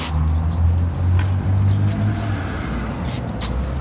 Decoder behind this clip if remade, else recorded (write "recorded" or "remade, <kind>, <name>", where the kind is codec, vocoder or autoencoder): recorded